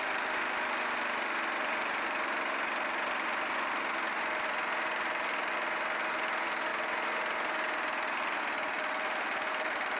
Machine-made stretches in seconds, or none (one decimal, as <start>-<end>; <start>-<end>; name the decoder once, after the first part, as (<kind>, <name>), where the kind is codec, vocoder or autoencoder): none